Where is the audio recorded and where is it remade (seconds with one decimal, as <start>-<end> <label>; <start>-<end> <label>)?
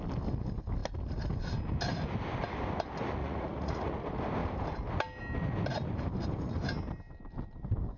0.0-3.2 recorded; 3.2-3.9 remade; 3.9-8.0 recorded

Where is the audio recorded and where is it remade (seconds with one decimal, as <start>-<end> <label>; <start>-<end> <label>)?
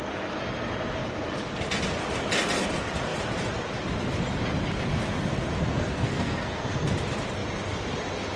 0.0-5.6 recorded; 5.6-6.9 remade; 6.9-8.4 recorded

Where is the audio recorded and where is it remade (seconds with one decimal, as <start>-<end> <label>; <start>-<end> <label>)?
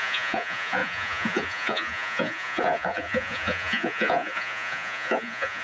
0.0-5.6 remade